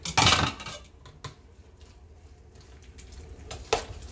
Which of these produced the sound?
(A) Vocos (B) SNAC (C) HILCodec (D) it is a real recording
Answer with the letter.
D